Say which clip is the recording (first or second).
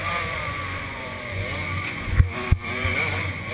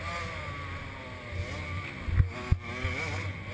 second